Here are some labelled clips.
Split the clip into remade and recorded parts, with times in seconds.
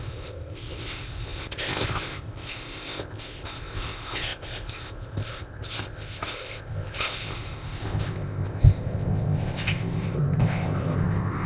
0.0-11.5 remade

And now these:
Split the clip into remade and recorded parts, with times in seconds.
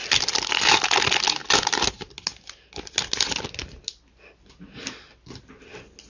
0.0-6.1 recorded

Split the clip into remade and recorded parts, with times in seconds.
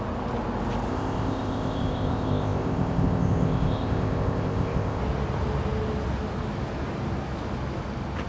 0.0-0.9 recorded; 0.9-5.0 remade; 5.0-8.3 recorded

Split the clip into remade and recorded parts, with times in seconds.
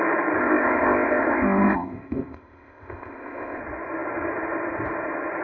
0.0-0.4 recorded; 0.4-3.6 remade; 3.6-5.4 recorded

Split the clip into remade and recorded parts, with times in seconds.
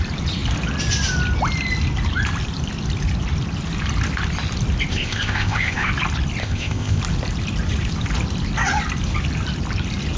0.0-4.9 recorded; 4.9-5.9 remade; 5.9-6.4 recorded; 6.4-7.0 remade; 7.0-10.2 recorded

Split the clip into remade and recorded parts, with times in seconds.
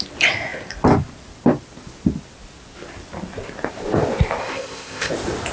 0.0-4.4 recorded; 4.4-5.1 remade; 5.1-5.5 recorded